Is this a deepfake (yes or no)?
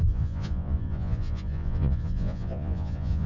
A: yes